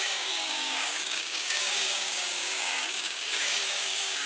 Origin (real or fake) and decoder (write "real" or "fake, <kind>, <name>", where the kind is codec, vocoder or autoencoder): fake, codec, DAC